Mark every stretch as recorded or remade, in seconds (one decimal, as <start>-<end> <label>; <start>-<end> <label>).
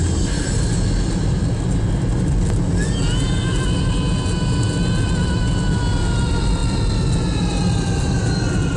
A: 0.0-8.8 recorded